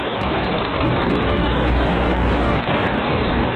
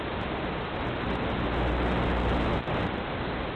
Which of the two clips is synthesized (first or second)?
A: first